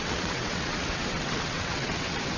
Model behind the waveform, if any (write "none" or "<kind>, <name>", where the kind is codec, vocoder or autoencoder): vocoder, WaveNeXt